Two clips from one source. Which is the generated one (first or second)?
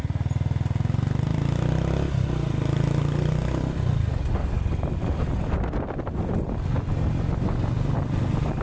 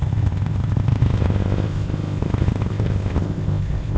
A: second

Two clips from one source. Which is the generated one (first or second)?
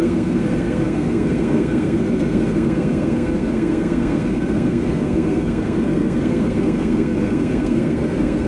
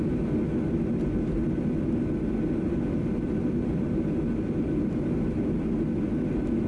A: first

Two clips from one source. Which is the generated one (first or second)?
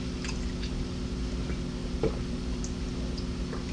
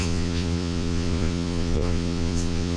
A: second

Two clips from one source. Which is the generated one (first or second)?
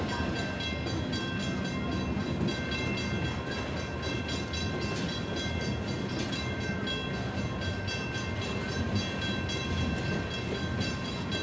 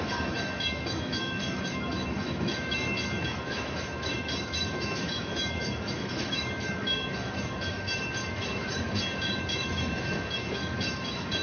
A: second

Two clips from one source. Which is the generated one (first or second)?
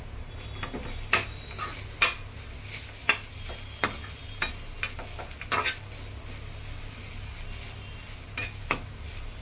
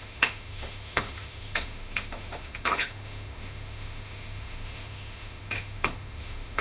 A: second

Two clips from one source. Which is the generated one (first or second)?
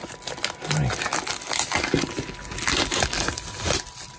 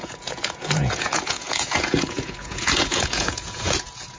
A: second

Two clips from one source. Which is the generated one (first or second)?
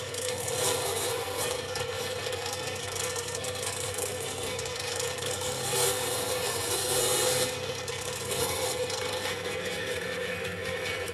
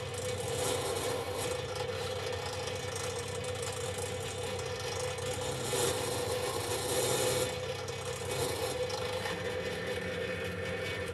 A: first